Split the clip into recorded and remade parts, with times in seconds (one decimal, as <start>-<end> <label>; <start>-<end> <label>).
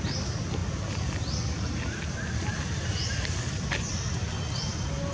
0.0-5.1 recorded